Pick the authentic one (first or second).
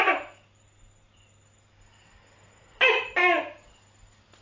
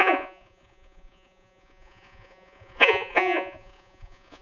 first